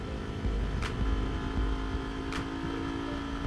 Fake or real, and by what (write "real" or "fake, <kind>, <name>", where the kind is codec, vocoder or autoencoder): real